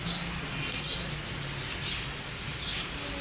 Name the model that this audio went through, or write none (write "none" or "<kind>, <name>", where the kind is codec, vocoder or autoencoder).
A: none